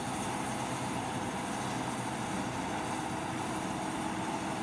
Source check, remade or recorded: recorded